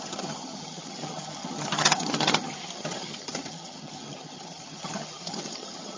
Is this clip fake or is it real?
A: fake